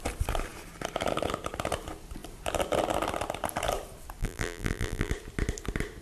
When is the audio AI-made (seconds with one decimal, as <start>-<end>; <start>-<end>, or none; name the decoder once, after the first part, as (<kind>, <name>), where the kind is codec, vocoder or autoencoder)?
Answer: 4.2-5.1 (vocoder, BigVGAN v2)

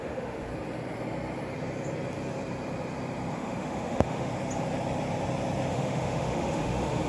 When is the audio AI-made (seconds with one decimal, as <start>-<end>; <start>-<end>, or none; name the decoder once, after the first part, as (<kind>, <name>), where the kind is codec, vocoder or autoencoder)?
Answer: 0.0-0.5 (autoencoder, DAC-VAE); 3.3-4.3; 5.7-7.1